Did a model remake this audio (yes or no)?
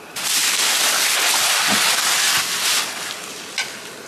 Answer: no